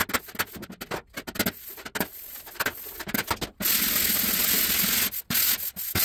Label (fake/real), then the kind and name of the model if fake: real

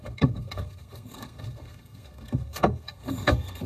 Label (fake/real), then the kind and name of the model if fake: fake, codec, SNAC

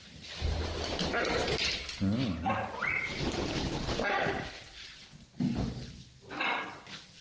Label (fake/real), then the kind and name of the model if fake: real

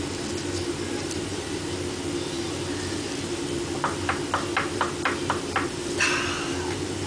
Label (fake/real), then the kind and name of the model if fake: real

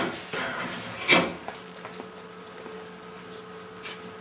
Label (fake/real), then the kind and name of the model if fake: real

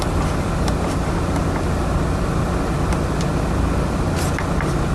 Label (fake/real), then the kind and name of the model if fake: real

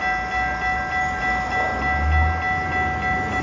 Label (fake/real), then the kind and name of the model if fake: real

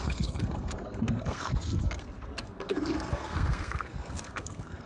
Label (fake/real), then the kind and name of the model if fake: fake, codec, SNAC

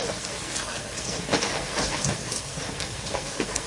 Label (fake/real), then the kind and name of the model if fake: fake, codec, SNAC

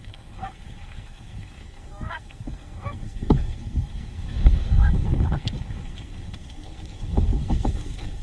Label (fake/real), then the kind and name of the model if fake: fake, codec, SNAC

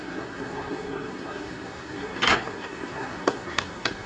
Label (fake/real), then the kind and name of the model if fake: fake, codec, SNAC